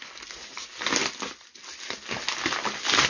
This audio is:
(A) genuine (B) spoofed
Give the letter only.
A